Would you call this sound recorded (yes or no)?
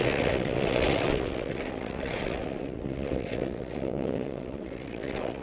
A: no